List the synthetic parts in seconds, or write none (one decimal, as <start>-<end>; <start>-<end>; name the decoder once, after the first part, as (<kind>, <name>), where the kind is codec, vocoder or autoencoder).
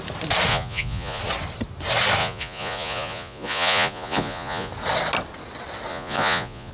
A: 0.5-1.2 (vocoder, Vocos); 2.2-4.7; 5.9-6.7